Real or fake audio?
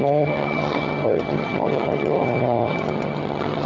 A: fake